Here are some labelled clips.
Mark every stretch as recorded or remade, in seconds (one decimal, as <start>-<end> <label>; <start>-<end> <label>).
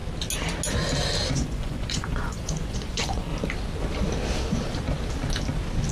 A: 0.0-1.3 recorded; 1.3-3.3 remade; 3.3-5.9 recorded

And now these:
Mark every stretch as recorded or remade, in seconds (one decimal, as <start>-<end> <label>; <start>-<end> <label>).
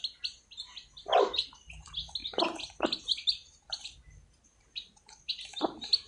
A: 0.0-6.1 recorded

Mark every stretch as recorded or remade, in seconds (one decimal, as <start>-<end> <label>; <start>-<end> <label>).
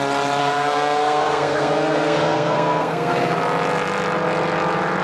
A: 0.0-0.4 recorded; 0.4-3.4 remade; 3.4-5.0 recorded